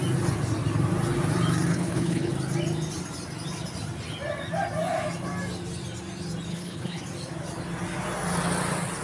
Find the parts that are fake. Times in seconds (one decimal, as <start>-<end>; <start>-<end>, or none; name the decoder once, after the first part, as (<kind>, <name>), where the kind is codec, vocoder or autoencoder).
1.7-2.3 (codec, HILCodec); 6.5-7.0